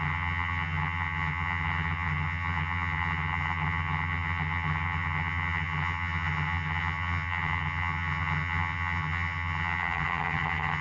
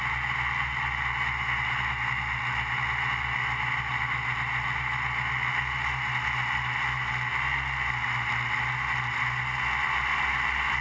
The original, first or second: second